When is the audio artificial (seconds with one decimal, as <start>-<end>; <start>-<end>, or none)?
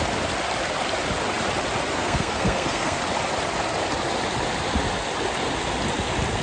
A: 1.9-3.0